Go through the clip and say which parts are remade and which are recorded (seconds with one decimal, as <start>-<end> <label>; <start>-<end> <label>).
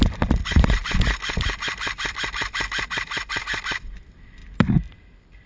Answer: 0.0-0.8 remade; 0.8-2.9 recorded; 2.9-5.5 remade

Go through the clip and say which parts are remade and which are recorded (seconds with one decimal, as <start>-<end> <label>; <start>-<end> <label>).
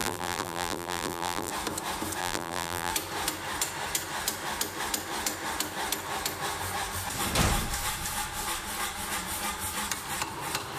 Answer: 0.0-1.5 remade; 1.5-2.2 recorded; 2.2-2.9 remade; 2.9-10.8 recorded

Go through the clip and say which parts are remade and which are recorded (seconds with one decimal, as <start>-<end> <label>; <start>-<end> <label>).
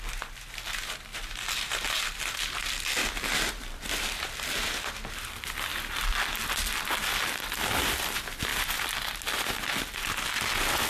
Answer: 0.0-3.0 recorded; 3.0-4.2 remade; 4.2-5.7 recorded; 5.7-6.9 remade; 6.9-8.5 recorded; 8.5-9.5 remade; 9.5-10.9 recorded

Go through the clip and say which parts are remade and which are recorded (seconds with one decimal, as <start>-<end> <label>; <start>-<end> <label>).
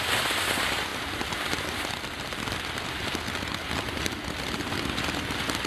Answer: 0.0-0.9 recorded; 0.9-3.1 remade; 3.1-3.6 recorded; 3.6-4.7 remade; 4.7-5.7 recorded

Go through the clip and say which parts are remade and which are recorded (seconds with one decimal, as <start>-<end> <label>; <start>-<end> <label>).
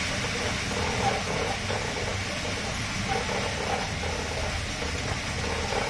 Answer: 0.0-5.9 recorded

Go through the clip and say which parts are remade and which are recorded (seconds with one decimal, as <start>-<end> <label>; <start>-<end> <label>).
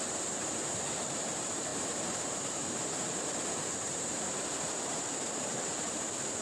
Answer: 0.0-6.4 remade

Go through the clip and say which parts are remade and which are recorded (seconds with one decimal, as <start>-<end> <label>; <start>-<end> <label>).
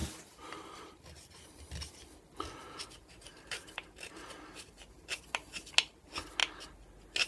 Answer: 0.0-3.3 recorded; 3.3-4.9 remade; 4.9-7.3 recorded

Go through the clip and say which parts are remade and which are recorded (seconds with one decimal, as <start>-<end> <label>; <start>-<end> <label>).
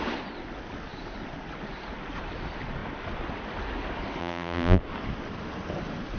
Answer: 0.0-4.2 recorded; 4.2-4.8 remade; 4.8-6.2 recorded